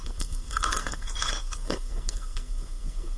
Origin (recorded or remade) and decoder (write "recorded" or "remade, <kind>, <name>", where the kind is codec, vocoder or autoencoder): remade, codec, SNAC